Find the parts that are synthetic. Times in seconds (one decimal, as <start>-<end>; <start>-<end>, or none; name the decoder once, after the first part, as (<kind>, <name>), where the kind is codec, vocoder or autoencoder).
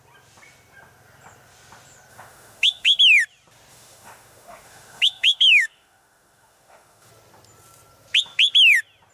2.1-3.0 (autoencoder, DAC-VAE); 3.7-7.1